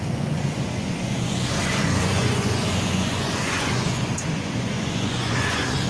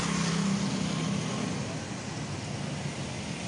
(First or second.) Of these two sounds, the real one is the second